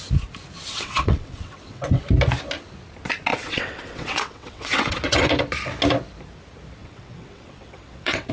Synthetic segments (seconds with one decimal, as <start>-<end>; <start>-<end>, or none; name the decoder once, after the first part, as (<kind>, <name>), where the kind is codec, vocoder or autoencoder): 0.7-2.0 (vocoder, WaveNeXt); 3.3-5.4; 6.8-8.3